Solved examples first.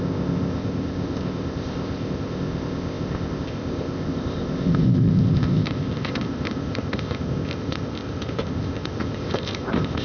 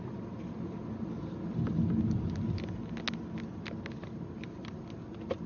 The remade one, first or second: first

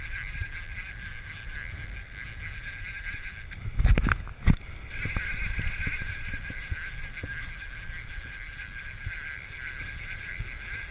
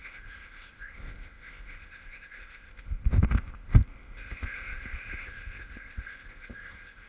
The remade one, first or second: second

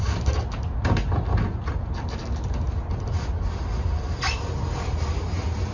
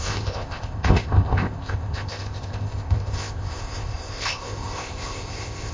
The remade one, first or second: second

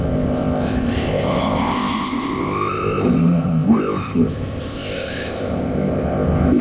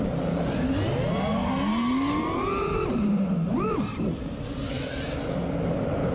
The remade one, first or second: first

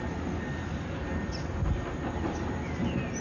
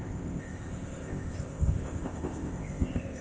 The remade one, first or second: second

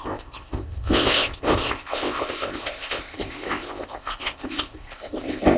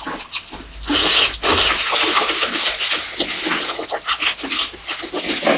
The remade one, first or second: first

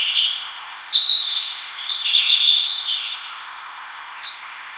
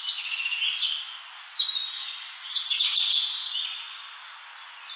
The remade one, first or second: first